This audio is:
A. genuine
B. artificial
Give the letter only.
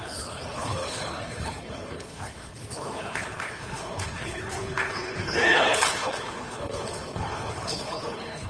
B